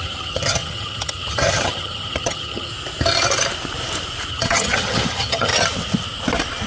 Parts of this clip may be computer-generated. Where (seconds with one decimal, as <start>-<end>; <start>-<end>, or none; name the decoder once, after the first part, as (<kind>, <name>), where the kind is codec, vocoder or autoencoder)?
0.0-2.7 (vocoder, HiFi-GAN); 4.3-5.5